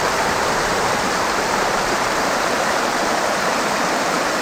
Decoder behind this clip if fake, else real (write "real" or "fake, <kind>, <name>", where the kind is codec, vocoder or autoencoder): fake, vocoder, BigVGAN v2